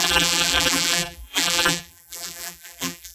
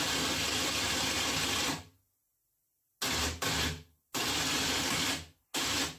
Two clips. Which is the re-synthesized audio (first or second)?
first